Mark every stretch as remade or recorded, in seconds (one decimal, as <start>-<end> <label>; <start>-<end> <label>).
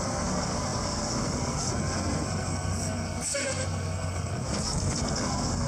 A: 0.0-5.7 remade